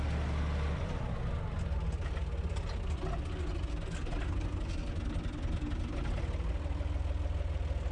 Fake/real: real